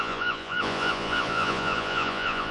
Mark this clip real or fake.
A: fake